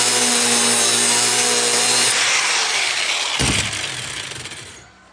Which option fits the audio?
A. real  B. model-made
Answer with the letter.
A